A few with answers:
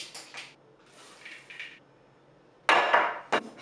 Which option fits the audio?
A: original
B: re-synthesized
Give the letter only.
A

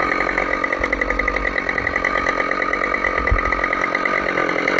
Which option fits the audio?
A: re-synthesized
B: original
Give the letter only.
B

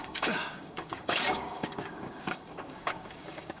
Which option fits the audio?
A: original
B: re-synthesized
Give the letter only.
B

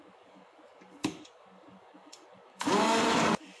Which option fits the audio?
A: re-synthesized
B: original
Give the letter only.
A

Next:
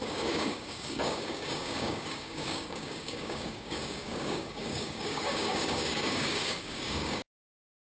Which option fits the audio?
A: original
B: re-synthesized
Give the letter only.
B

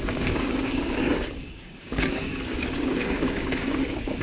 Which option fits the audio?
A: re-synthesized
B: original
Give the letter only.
A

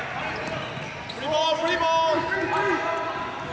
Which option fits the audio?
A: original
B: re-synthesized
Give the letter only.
A